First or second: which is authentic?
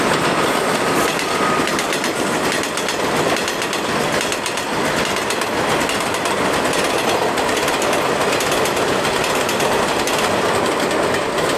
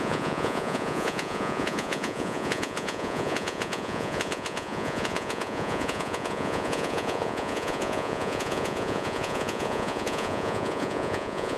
first